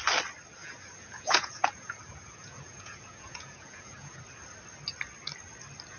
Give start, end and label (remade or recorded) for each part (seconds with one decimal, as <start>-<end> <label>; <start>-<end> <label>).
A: 0.0-0.6 recorded; 0.6-4.2 remade; 4.2-6.0 recorded